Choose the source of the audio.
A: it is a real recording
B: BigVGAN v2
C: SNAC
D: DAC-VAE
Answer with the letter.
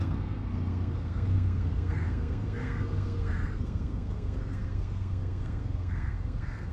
C